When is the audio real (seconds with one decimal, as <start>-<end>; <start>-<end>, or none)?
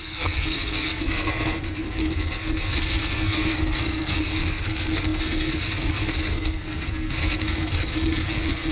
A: none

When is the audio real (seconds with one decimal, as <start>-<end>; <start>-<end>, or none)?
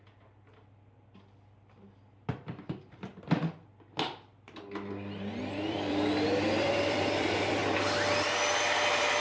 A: 3.1-5.4; 7.6-8.6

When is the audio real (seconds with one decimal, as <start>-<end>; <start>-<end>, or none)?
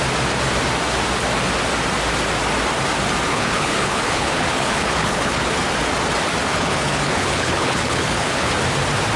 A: 0.0-3.3; 5.5-6.5; 8.5-9.2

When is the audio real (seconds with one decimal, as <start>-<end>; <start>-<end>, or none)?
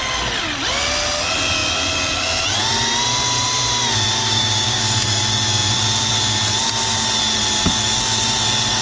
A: 0.0-4.2; 4.8-8.8